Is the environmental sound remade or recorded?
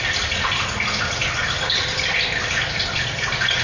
recorded